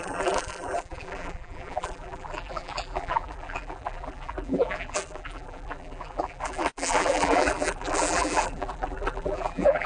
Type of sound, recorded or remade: remade